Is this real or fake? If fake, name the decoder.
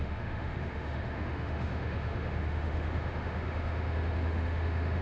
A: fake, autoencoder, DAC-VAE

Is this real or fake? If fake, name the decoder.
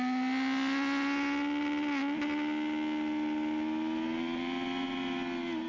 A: real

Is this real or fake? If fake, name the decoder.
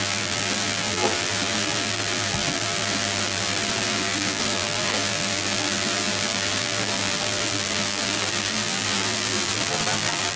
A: fake, vocoder, BigVGAN v2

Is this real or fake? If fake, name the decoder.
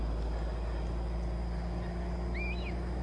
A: real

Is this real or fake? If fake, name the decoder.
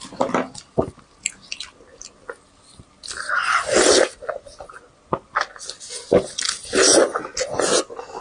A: real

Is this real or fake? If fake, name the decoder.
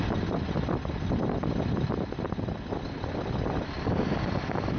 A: real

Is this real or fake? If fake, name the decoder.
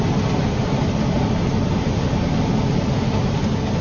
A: real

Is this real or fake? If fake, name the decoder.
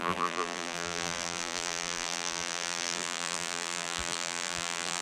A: fake, vocoder, BigVGAN v2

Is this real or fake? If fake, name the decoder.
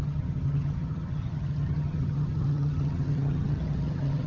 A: fake, vocoder, HiFi-GAN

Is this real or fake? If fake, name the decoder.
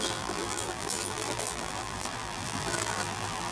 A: fake, vocoder, BigVGAN v2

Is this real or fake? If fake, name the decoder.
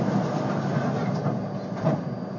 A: real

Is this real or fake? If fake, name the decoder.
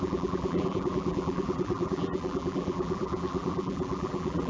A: fake, vocoder, BigVGAN v2